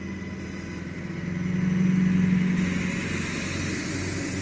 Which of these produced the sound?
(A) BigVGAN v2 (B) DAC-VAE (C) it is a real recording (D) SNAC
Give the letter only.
C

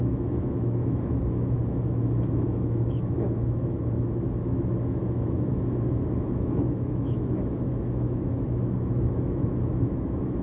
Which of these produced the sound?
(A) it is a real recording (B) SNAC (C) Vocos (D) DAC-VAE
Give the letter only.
D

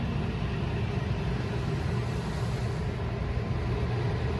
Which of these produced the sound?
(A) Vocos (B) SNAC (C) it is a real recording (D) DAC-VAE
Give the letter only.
C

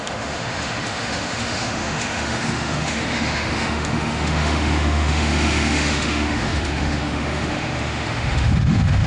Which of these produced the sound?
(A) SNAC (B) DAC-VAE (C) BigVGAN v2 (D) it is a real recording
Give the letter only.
B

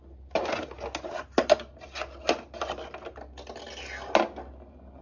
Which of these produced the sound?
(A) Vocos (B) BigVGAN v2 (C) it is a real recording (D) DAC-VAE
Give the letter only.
C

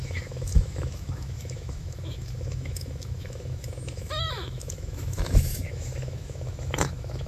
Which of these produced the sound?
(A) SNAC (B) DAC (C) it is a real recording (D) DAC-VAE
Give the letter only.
D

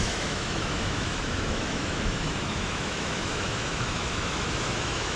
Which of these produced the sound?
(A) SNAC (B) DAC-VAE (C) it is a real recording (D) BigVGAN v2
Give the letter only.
B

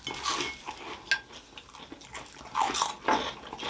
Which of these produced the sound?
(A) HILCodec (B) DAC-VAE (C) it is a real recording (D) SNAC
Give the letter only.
C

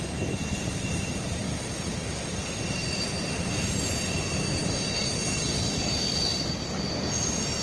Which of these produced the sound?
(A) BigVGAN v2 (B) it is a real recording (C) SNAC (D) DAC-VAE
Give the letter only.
B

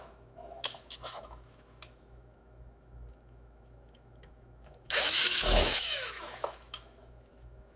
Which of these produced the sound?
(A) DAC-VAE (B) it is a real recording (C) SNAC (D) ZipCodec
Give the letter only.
A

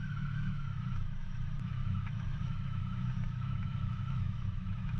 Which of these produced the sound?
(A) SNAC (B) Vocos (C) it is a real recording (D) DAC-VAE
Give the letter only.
D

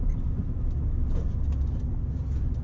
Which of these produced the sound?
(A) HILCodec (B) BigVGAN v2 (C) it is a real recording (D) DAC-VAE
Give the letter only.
C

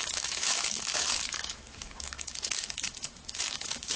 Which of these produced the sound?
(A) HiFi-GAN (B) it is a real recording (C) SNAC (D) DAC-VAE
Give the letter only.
D